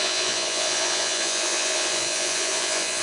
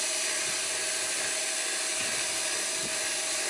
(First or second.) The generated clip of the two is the first